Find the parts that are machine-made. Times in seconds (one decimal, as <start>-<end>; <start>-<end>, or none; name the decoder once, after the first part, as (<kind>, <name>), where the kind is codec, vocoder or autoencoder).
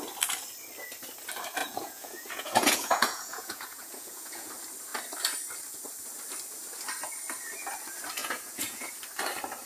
1.6-4.5 (vocoder, Vocos); 8.2-8.9